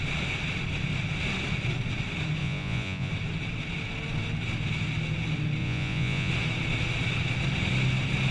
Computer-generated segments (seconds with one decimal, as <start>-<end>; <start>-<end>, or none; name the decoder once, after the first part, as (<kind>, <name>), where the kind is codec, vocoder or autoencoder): 2.4-3.1 (vocoder, Vocos); 5.6-6.3